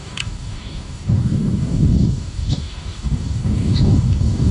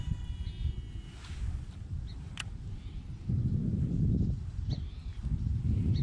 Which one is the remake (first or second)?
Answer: first